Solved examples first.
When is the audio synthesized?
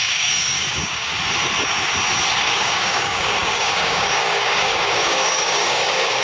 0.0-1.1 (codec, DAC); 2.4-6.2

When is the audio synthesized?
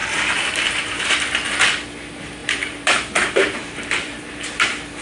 0.0-1.2 (vocoder, BigVGAN v2); 2.4-4.2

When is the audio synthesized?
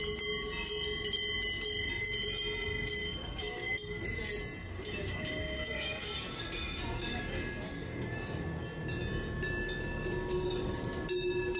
3.0-4.0 (codec, DAC); 4.7-8.4; 10.3-10.8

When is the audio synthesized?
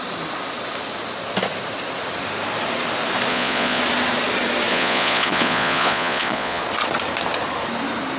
3.3-3.8 (vocoder, Vocos); 4.7-6.6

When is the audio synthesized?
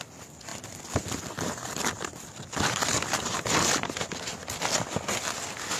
none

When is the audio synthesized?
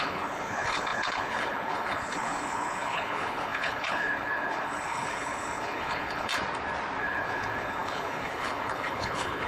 0.0-6.3 (codec, HILCodec); 7.0-9.5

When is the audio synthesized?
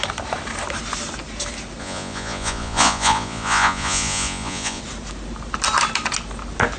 1.8-4.8 (vocoder, Vocos)